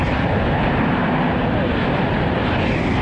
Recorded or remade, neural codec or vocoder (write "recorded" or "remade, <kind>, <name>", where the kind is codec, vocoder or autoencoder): recorded